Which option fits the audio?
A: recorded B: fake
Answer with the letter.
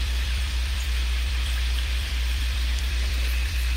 B